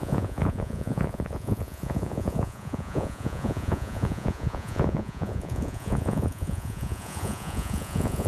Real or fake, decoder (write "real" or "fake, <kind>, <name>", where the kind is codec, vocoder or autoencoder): fake, vocoder, Vocos